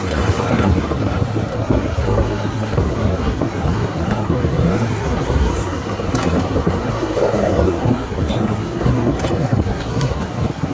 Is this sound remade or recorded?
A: remade